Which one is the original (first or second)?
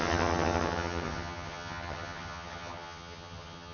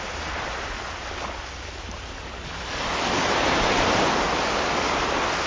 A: second